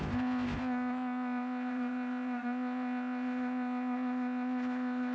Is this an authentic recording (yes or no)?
no